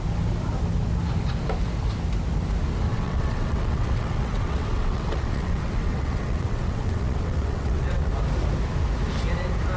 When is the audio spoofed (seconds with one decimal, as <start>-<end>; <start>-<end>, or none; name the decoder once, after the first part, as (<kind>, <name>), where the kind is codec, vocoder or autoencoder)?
2.9-8.1 (vocoder, WaveNeXt)